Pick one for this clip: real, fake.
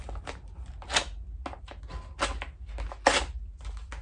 real